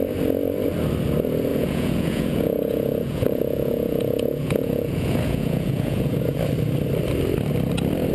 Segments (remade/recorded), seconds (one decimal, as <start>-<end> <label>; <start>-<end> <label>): 0.0-1.5 recorded; 1.5-6.4 remade; 6.4-8.1 recorded